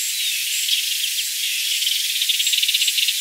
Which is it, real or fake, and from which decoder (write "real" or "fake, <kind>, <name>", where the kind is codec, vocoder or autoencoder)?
real